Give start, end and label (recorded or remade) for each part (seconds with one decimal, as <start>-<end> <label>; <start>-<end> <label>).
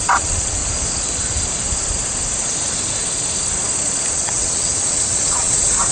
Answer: 0.0-0.6 remade; 0.6-4.1 recorded; 4.1-5.9 remade